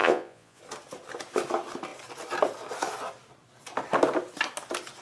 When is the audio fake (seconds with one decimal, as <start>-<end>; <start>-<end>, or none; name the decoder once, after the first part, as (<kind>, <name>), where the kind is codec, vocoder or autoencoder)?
0.0-0.6 (vocoder, Vocos)